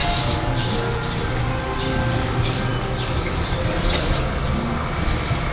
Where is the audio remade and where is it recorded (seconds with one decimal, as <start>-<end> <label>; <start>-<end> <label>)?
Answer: 0.0-5.5 recorded

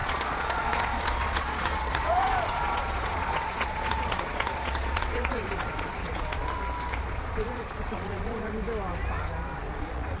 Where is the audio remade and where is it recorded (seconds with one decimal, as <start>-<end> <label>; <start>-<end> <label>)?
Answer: 0.0-6.4 remade; 6.4-6.9 recorded; 6.9-8.5 remade; 8.5-9.7 recorded; 9.7-10.2 remade

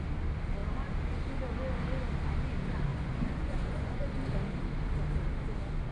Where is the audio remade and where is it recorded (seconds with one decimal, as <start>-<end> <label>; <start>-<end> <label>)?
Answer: 0.0-2.9 recorded; 2.9-4.1 remade; 4.1-5.9 recorded

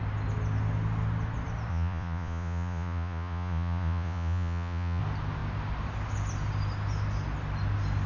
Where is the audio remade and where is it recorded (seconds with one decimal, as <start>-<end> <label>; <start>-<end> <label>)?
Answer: 0.0-1.7 recorded; 1.7-5.0 remade; 5.0-8.1 recorded